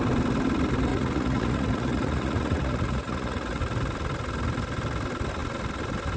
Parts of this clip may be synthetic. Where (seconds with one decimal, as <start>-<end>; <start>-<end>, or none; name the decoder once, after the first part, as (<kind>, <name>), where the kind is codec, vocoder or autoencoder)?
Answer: 0.9-3.6 (vocoder, Vocos)